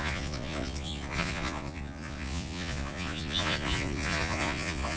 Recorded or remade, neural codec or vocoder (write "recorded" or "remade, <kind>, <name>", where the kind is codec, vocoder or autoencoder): remade, vocoder, Vocos